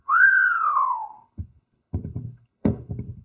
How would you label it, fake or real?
fake